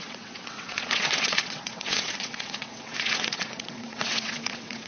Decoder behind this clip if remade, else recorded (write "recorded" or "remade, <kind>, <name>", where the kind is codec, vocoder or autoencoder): remade, vocoder, WaveNeXt